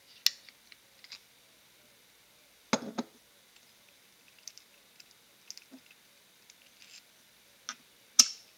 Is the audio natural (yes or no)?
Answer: yes